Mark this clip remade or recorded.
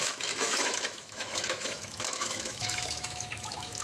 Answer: remade